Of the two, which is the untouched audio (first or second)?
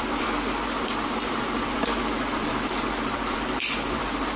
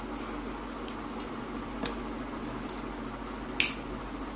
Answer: second